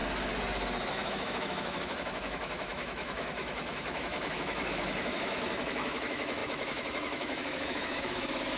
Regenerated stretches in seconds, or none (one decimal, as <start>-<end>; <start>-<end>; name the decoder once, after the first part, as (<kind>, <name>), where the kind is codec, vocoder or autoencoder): 0.9-8.6 (autoencoder, DAC-VAE)